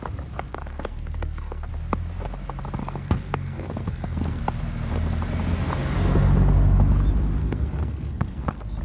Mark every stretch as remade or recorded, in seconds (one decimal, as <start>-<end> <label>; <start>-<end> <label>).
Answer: 0.0-0.5 recorded; 0.5-1.7 remade; 1.7-2.8 recorded; 2.8-4.4 remade; 4.4-7.4 recorded; 7.4-8.8 remade